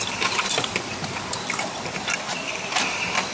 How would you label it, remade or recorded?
remade